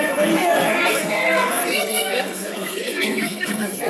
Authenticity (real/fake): fake